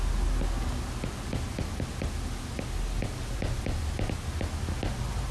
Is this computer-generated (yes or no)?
no